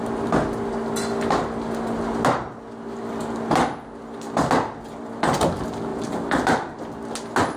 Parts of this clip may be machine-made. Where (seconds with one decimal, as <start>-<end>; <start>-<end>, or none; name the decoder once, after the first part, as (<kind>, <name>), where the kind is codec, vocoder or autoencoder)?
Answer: 5.9-6.8 (vocoder, BigVGAN v2)